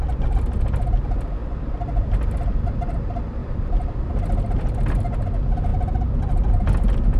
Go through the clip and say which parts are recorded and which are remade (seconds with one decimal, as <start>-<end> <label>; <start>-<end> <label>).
0.0-3.4 recorded; 3.4-4.9 remade; 4.9-7.2 recorded